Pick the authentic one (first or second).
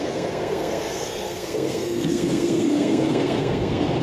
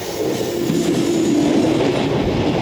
second